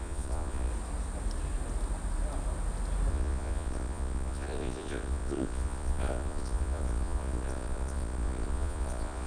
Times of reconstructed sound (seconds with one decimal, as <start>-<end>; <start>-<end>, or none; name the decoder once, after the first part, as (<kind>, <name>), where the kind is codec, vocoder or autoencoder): 0.0-0.7 (vocoder, Vocos); 3.1-9.3